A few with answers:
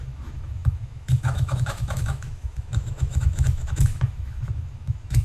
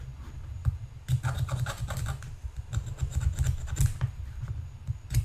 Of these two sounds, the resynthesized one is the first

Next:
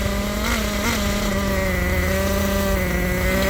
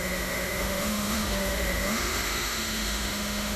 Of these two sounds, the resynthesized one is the second